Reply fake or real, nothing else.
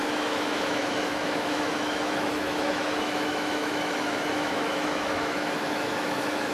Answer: fake